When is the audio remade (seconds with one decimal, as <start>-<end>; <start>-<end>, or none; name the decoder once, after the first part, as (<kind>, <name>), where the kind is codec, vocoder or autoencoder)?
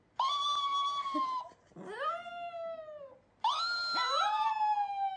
none